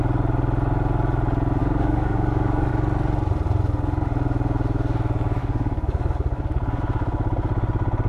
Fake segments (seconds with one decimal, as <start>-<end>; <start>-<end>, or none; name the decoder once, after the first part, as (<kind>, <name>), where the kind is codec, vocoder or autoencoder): 1.6-2.7 (codec, DAC); 5.4-6.8